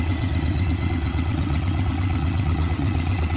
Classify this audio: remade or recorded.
remade